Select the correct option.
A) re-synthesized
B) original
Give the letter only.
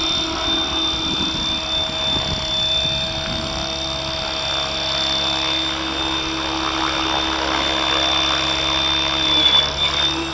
B